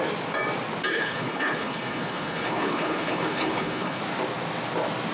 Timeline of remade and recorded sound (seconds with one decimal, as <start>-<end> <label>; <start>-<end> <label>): 0.0-0.9 recorded; 0.9-4.0 remade; 4.0-5.1 recorded